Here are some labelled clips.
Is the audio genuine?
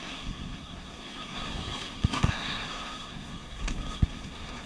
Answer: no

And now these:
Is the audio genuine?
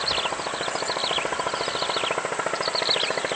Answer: yes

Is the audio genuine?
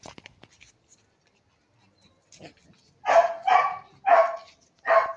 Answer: yes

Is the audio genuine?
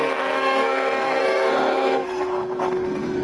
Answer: no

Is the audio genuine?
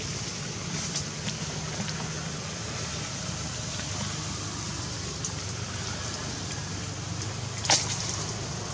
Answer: yes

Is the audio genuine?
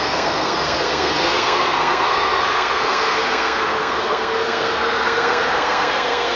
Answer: no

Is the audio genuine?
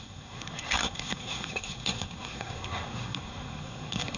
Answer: no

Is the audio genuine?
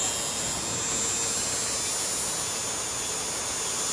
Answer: yes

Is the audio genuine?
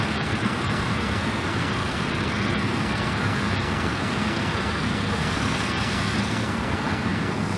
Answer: no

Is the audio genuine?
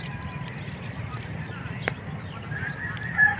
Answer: yes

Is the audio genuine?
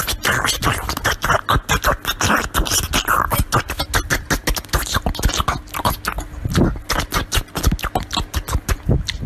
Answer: yes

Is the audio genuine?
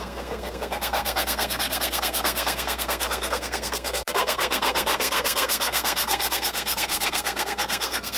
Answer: no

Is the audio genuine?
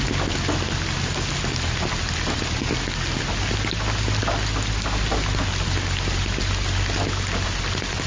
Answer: yes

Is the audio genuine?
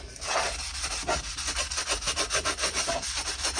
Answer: yes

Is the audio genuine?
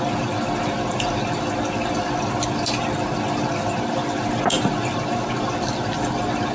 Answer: yes